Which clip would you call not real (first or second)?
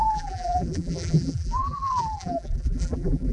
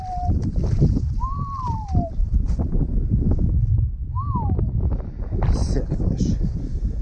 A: first